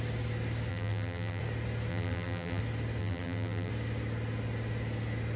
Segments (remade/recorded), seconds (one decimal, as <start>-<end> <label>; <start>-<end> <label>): 0.0-0.7 recorded; 0.7-1.4 remade; 1.4-1.9 recorded; 1.9-2.6 remade; 2.6-3.0 recorded; 3.0-3.7 remade; 3.7-5.4 recorded